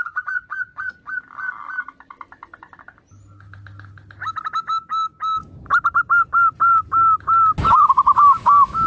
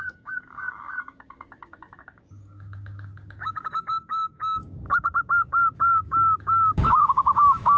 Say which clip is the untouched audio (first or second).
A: first